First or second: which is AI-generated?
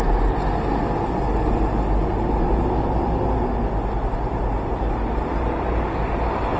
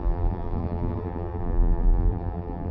second